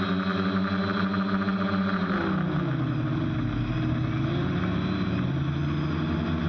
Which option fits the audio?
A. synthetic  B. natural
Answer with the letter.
B